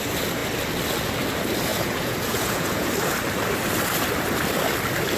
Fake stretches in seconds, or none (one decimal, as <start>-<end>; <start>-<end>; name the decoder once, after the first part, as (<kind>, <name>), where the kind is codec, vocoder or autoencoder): 1.7-2.9 (vocoder, Vocos)